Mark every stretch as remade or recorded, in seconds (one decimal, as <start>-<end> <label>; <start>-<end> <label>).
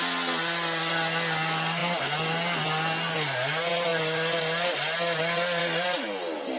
0.0-6.6 recorded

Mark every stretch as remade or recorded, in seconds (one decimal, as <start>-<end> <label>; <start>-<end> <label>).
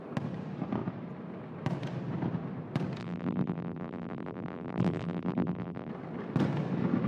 0.0-3.0 recorded; 3.0-5.9 remade; 5.9-7.1 recorded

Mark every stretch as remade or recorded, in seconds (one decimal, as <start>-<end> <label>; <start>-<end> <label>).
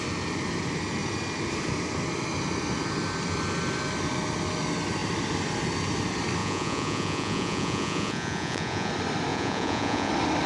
0.0-6.4 recorded; 6.4-8.9 remade; 8.9-9.3 recorded; 9.3-10.1 remade; 10.1-10.5 recorded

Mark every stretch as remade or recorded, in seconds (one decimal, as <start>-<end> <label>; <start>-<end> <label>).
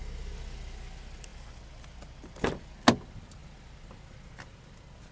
0.0-5.1 recorded